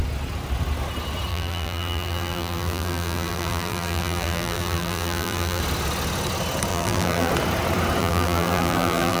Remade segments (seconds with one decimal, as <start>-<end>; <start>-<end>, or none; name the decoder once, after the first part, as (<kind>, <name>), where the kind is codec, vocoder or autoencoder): 1.3-5.6 (vocoder, BigVGAN v2); 6.7-7.3; 8.0-9.2